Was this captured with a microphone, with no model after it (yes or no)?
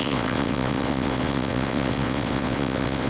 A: no